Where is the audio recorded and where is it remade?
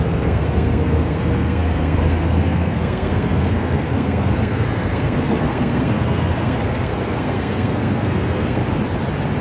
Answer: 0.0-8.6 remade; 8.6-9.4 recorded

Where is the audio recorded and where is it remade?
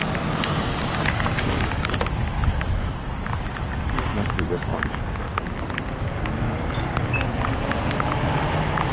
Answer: 0.0-2.4 recorded; 2.4-3.6 remade; 3.6-4.7 recorded; 4.7-7.6 remade; 7.6-8.9 recorded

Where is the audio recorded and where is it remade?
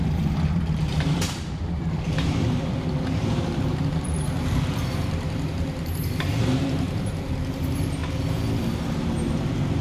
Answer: 0.0-8.0 remade; 8.0-8.6 recorded; 8.6-9.8 remade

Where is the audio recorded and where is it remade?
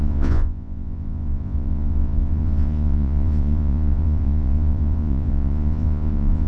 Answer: 0.0-6.5 remade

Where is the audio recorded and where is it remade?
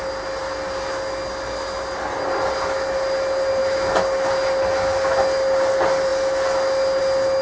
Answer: 0.0-7.4 recorded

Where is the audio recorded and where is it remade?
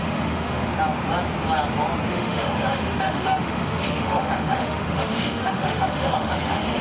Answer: 0.0-0.7 remade; 0.7-2.1 recorded; 2.1-6.8 remade